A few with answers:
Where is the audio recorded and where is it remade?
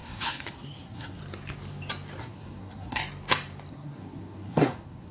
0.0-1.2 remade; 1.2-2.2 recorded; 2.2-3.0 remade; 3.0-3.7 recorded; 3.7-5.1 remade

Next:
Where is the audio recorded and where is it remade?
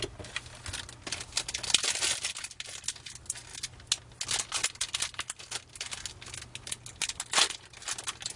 0.0-8.4 recorded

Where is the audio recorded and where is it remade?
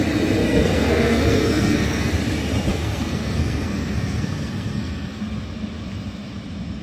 0.0-0.4 recorded; 0.4-2.1 remade; 2.1-2.7 recorded; 2.7-5.2 remade; 5.2-6.8 recorded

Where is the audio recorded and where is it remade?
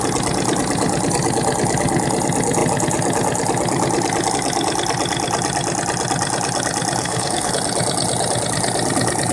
0.0-7.0 recorded; 7.0-7.5 remade; 7.5-9.3 recorded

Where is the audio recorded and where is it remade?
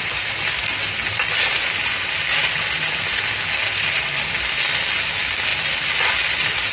0.0-6.7 recorded